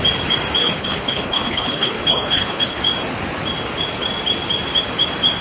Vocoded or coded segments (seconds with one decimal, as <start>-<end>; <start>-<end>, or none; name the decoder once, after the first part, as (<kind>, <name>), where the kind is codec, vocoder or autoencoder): 0.6-2.8 (codec, HILCodec)